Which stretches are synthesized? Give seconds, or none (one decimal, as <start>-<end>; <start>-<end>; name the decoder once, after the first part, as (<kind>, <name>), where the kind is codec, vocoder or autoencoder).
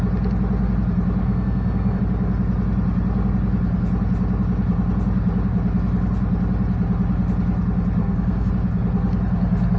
1.2-2.0 (codec, SNAC); 8.0-8.5